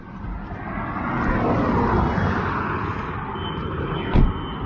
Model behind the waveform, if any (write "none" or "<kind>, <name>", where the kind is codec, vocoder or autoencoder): none